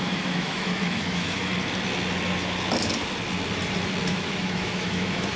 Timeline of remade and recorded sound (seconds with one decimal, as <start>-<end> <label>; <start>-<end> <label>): 0.0-1.5 remade; 1.5-4.1 recorded; 4.1-5.4 remade